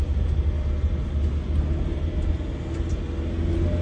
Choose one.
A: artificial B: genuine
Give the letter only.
B